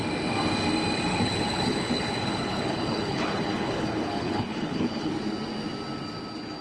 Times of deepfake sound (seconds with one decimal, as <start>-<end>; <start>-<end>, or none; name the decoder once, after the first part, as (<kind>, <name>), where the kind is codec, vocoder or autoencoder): 1.1-5.1 (codec, HILCodec)